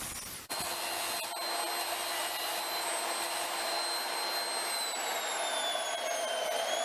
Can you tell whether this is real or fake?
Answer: real